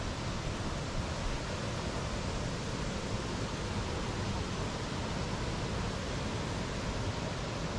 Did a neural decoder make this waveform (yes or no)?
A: no